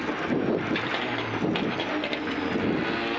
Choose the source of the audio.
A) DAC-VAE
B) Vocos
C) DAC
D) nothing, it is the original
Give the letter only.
D